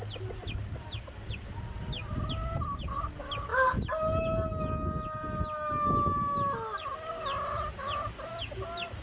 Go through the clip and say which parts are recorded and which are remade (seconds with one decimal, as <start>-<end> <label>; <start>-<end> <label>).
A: 0.0-9.0 recorded